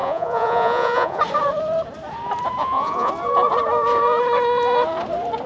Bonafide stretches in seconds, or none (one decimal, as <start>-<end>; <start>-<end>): 1.2-2.6; 3.1-5.5